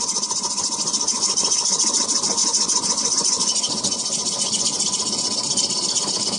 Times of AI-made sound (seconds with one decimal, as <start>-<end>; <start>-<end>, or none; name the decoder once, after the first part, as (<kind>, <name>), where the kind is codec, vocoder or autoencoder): 0.0-4.7 (vocoder, Vocos)